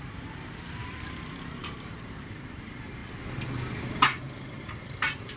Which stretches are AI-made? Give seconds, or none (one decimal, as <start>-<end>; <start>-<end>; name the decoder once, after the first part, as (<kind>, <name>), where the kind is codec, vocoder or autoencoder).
0.0-0.8 (vocoder, BigVGAN v2); 1.4-3.0; 3.8-5.4